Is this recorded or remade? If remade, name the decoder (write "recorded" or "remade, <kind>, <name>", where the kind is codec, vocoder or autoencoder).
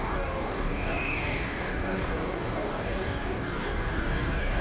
remade, codec, DAC